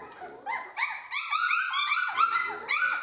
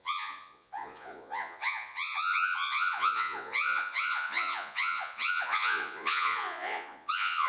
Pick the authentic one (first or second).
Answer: first